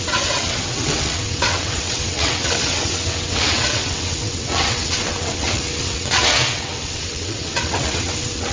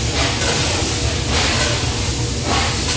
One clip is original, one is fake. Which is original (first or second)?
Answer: second